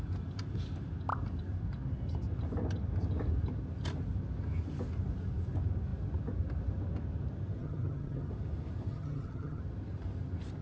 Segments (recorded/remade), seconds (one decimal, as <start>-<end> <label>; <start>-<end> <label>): 0.0-7.6 recorded; 7.6-8.3 remade; 8.3-8.9 recorded; 8.9-9.6 remade; 9.6-10.6 recorded